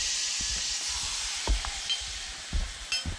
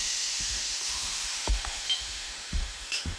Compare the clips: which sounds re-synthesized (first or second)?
second